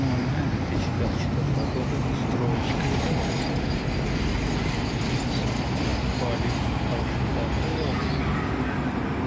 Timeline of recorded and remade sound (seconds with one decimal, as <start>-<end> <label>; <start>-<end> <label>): 0.0-9.3 recorded